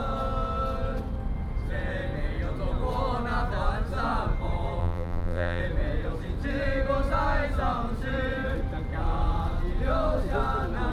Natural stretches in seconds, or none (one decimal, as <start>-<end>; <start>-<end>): 0.0-4.8; 5.6-10.9